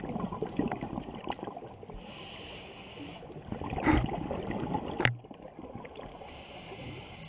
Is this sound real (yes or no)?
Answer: yes